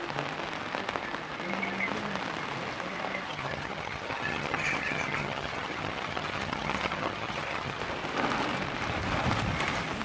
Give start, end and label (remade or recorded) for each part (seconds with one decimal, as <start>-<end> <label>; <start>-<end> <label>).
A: 0.0-3.3 recorded; 3.3-7.8 remade; 7.8-10.0 recorded